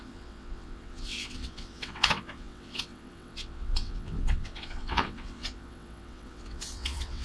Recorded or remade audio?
remade